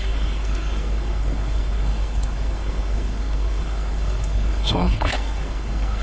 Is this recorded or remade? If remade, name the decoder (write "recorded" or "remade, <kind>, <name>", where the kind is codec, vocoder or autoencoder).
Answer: remade, codec, SNAC